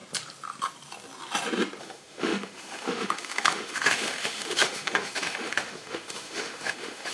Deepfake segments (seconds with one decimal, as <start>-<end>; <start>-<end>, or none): 1.8-7.1